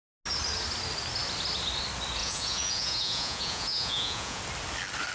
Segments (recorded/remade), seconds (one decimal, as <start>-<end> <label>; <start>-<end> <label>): 0.0-2.2 recorded; 2.2-4.4 remade; 4.4-5.1 recorded

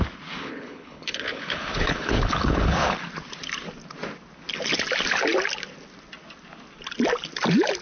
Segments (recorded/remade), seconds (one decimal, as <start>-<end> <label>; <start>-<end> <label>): 0.0-0.4 recorded; 0.4-3.0 remade; 3.0-7.8 recorded

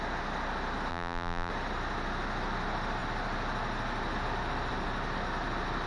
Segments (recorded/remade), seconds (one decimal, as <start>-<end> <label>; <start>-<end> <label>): 0.0-0.9 recorded; 0.9-1.5 remade; 1.5-5.9 recorded

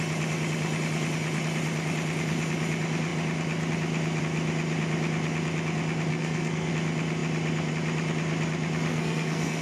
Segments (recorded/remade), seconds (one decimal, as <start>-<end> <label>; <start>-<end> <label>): 0.0-6.1 recorded; 6.1-6.7 remade; 6.7-8.9 recorded; 8.9-9.6 remade

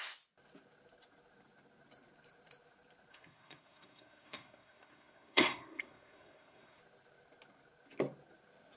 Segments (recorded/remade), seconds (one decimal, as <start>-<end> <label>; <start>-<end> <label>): 0.0-3.1 recorded; 3.1-6.8 remade; 6.8-8.8 recorded